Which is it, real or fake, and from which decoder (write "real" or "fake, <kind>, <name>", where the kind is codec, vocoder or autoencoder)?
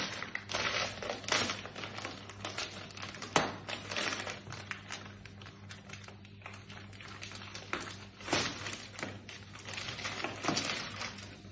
real